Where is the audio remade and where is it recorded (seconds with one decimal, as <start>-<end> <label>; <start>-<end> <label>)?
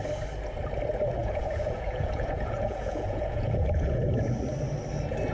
0.0-1.2 recorded; 1.2-4.4 remade; 4.4-5.3 recorded